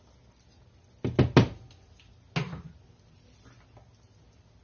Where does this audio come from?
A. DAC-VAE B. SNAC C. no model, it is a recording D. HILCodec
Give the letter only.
C